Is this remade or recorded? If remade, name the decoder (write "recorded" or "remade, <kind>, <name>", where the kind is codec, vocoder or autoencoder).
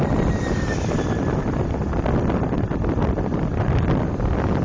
recorded